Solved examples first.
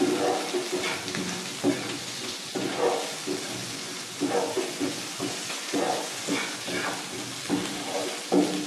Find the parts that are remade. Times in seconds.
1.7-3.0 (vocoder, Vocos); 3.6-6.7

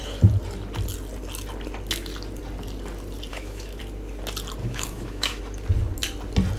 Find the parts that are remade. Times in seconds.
3.3-3.8 (autoencoder, DAC-VAE); 4.6-5.4

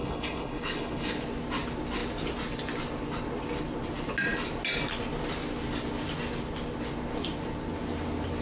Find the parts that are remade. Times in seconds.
0.0-1.1 (codec, HILCodec)

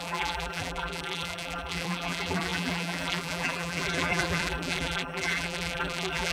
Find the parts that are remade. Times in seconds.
0.0-6.3 (vocoder, BigVGAN v2)

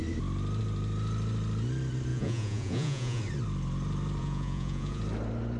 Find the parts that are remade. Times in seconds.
2.1-3.2 (vocoder, Vocos); 4.2-5.0

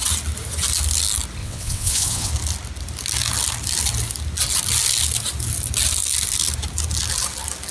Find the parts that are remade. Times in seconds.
1.4-2.3 (vocoder, WaveNeXt)